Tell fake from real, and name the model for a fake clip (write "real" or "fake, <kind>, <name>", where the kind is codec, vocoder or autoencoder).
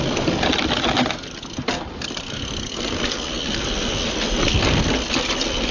real